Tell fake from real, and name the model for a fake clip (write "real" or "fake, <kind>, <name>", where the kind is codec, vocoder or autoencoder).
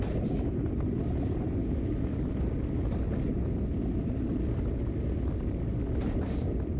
real